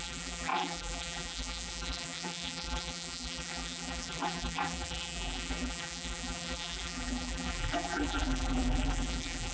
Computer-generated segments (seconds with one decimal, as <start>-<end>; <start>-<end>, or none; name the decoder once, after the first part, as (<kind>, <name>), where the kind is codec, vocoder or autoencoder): 0.0-9.5 (vocoder, BigVGAN v2)